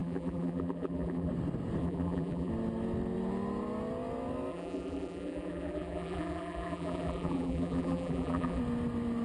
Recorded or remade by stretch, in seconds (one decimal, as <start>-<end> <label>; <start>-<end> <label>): 0.0-1.3 remade; 1.3-1.8 recorded; 1.8-2.5 remade; 2.5-4.5 recorded; 4.5-8.6 remade; 8.6-9.2 recorded